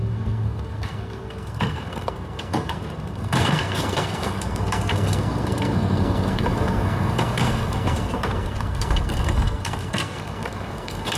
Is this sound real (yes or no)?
no